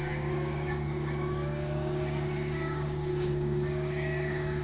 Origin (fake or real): fake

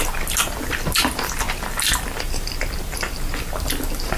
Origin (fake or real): real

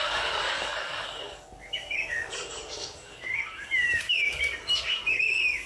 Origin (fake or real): fake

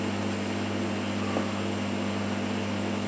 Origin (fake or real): real